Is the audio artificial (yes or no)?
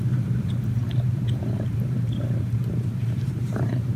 yes